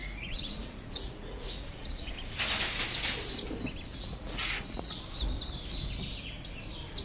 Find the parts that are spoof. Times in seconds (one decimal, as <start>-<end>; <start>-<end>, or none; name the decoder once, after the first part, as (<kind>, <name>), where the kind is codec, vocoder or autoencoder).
0.0-2.1 (vocoder, Vocos); 3.9-5.0